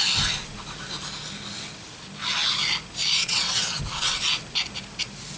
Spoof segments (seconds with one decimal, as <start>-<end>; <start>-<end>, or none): 3.2-3.8